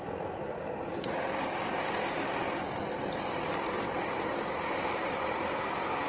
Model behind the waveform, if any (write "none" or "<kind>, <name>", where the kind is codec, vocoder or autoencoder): none